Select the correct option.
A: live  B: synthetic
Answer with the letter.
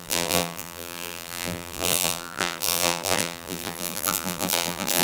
B